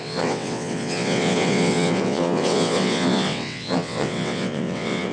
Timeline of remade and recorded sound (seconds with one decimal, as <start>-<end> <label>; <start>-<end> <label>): 0.0-5.1 remade